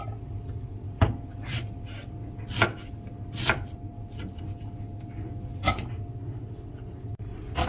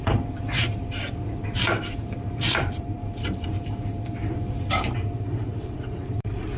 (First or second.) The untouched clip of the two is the first